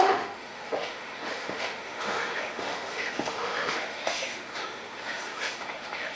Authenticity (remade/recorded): remade